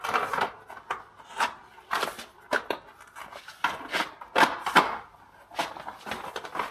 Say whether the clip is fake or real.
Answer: real